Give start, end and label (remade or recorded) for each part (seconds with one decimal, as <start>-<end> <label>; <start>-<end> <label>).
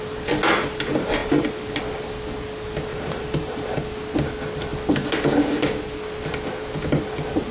0.0-2.9 recorded; 2.9-3.8 remade; 3.8-7.5 recorded